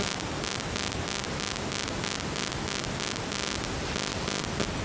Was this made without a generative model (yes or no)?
yes